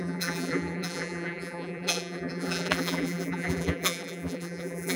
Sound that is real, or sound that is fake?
fake